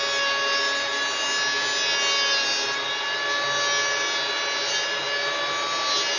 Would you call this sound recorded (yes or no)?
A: yes